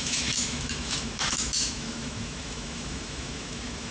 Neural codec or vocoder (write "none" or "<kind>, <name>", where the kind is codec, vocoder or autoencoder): autoencoder, DAC-VAE